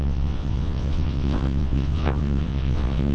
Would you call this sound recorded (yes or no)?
no